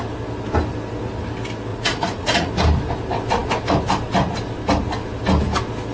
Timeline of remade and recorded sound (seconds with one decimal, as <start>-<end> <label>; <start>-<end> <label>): 0.0-1.7 recorded; 1.7-2.5 remade; 2.5-5.9 recorded